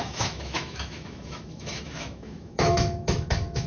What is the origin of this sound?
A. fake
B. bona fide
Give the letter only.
A